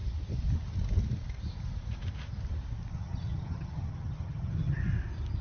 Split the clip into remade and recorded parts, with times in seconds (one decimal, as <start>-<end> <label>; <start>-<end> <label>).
0.0-2.9 recorded; 2.9-4.8 remade; 4.8-5.4 recorded